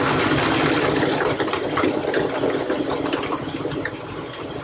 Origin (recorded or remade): recorded